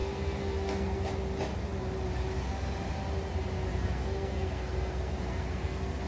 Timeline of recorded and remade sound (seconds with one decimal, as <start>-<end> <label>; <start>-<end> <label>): 0.0-1.1 remade; 1.1-3.7 recorded; 3.7-6.1 remade

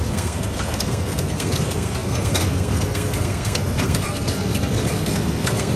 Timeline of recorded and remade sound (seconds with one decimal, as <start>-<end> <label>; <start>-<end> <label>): 0.0-5.8 remade